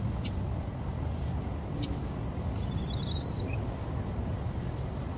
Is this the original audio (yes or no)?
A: yes